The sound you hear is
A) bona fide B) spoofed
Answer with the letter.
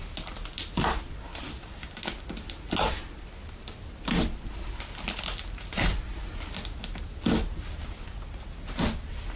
A